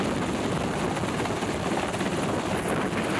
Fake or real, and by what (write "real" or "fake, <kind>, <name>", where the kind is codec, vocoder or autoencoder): real